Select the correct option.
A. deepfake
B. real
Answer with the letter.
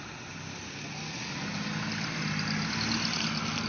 B